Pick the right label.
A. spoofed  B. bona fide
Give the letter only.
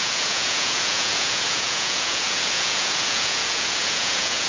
A